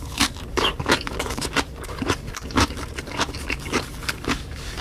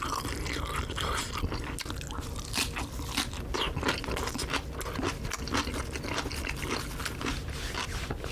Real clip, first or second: second